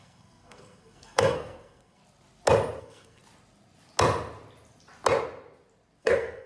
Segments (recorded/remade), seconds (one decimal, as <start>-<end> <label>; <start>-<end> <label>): 0.0-2.0 remade; 2.0-2.8 recorded; 2.8-3.2 remade; 3.2-6.0 recorded; 6.0-6.5 remade